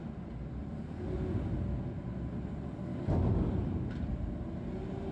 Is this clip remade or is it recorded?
recorded